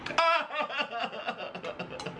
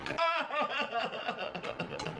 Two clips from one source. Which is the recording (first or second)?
first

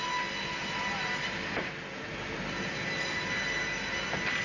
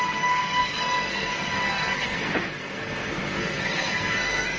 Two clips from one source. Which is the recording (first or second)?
first